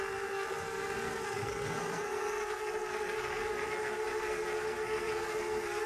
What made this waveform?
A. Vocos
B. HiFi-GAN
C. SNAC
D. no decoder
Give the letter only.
C